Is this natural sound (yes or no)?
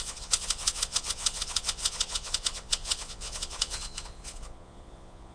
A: no